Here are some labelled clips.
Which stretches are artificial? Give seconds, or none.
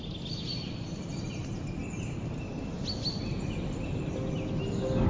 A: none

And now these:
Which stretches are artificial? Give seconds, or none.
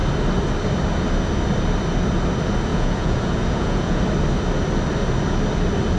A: 2.7-4.0 (vocoder, Vocos)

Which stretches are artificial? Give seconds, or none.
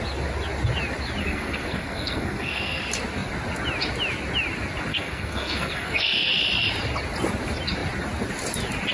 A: 1.2-2.8 (codec, SNAC); 4.9-6.3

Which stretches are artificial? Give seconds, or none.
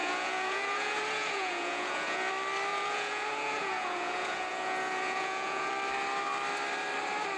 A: 0.0-2.3 (vocoder, Vocos); 2.7-5.7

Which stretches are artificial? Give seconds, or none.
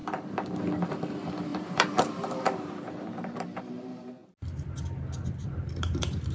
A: 0.9-4.2 (vocoder, BigVGAN v2); 5.8-6.3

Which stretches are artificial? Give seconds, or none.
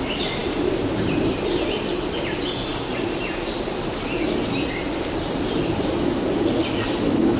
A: none